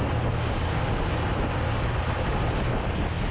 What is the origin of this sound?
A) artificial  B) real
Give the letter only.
B